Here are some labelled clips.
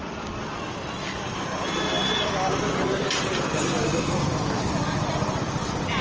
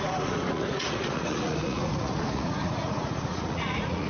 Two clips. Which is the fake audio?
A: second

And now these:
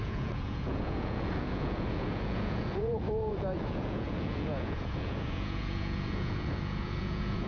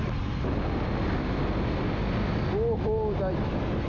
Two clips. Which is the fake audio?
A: first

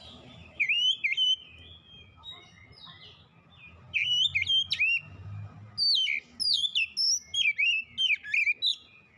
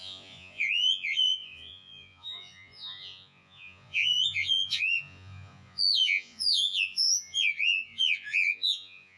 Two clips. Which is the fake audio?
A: second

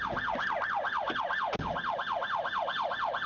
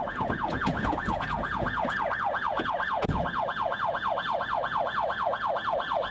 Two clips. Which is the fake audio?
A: second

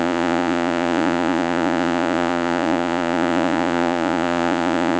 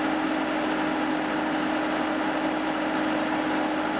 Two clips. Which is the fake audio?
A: first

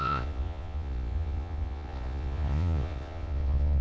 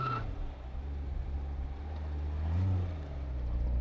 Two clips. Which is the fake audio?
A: first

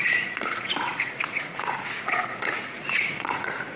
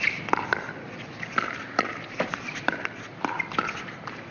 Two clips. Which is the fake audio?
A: first